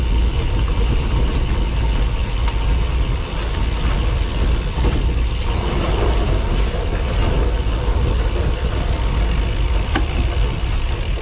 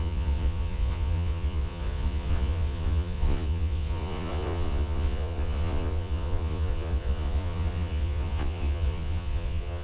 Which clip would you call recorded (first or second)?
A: first